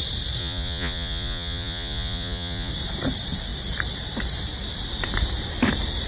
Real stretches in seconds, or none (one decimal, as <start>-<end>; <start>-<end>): 0.0-0.4; 2.7-6.1